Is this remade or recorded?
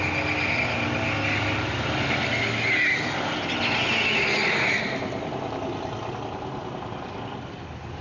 recorded